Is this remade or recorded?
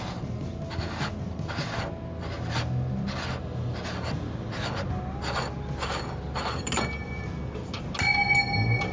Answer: recorded